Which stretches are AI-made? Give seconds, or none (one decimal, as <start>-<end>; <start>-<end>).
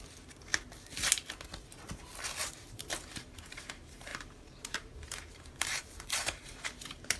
0.0-0.5; 2.5-7.2